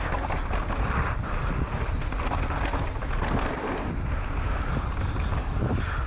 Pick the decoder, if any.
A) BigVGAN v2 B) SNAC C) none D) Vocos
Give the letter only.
C